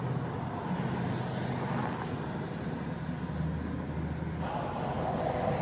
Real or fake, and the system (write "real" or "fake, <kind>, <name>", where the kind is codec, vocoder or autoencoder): real